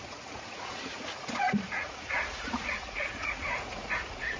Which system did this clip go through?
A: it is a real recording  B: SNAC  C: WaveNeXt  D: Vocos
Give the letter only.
D